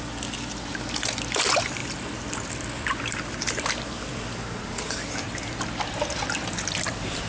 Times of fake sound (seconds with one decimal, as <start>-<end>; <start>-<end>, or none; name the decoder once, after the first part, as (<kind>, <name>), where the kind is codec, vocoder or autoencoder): none